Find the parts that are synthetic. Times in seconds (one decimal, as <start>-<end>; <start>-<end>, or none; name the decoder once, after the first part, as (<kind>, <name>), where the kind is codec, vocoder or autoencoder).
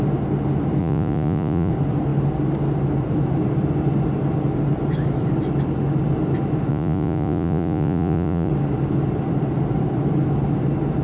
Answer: 0.8-1.7 (vocoder, Vocos); 6.7-8.5